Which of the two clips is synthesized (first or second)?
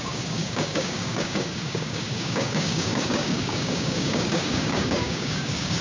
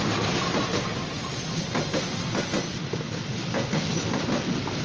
first